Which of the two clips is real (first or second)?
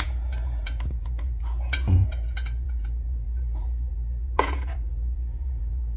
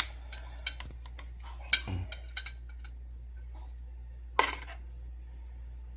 second